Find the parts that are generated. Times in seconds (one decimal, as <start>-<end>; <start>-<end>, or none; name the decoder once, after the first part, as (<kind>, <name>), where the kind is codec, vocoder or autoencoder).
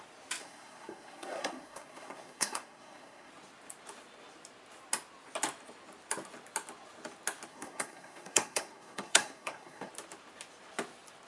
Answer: 0.4-3.3 (codec, SNAC); 7.5-9.9